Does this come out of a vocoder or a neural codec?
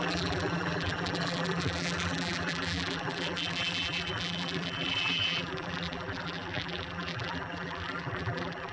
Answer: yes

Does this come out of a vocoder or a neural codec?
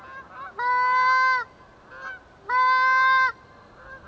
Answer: no